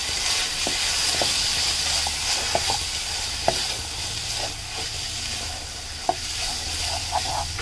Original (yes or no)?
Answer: yes